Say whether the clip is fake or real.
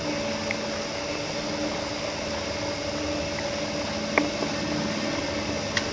real